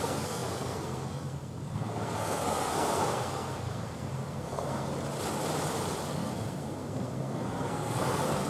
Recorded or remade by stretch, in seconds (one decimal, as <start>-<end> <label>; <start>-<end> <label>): 0.0-4.9 remade; 4.9-6.1 recorded; 6.1-8.5 remade